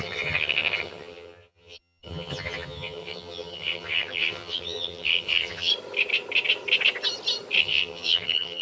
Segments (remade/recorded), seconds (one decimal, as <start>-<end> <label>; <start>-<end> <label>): 0.0-5.7 remade; 5.7-7.6 recorded; 7.6-8.6 remade